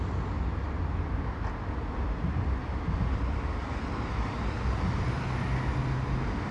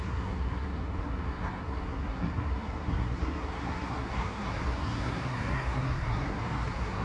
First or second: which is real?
first